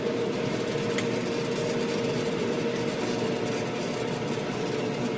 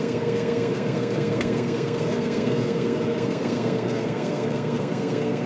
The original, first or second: first